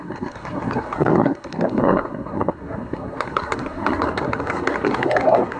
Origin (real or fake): fake